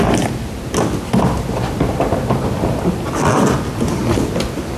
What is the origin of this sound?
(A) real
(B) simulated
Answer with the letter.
A